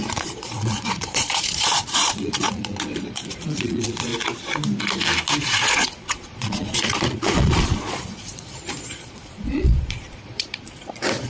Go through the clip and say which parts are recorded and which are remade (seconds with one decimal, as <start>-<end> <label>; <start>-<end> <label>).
0.0-4.1 remade; 4.1-5.4 recorded; 5.4-11.3 remade